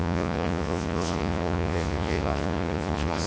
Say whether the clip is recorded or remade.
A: remade